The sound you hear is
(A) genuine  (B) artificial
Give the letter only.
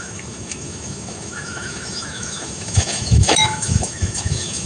B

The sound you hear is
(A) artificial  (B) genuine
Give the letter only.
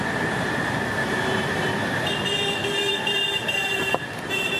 A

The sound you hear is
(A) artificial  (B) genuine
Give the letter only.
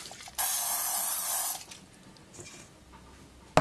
B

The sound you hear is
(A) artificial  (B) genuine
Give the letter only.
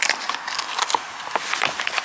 B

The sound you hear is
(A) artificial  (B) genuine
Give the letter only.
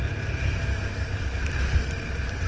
B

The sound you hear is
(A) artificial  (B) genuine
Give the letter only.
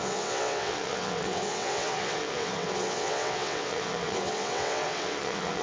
A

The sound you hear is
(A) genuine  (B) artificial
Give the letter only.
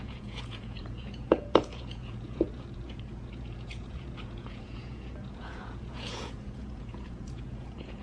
B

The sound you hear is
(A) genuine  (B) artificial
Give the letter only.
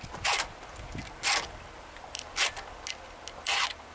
A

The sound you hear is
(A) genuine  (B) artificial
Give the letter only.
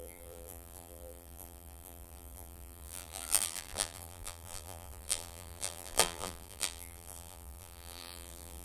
B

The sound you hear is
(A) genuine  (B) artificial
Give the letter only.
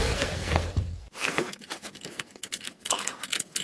B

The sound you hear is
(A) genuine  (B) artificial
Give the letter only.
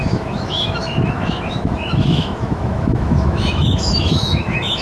B